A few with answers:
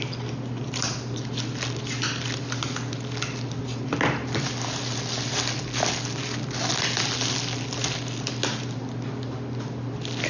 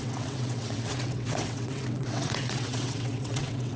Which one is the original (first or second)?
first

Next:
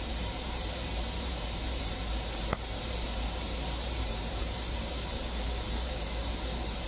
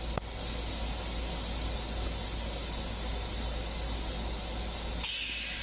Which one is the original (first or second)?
second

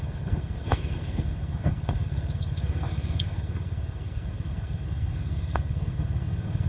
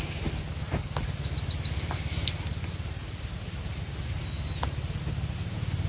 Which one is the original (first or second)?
second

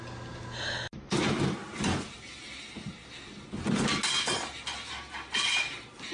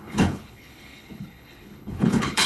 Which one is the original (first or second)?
first